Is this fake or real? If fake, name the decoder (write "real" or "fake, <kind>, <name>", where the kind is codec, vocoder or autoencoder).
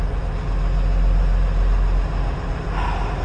real